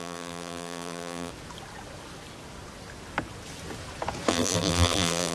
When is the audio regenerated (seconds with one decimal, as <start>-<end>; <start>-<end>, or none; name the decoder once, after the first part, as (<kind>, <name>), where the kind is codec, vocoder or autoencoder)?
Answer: 0.0-1.3 (vocoder, BigVGAN v2); 4.3-5.3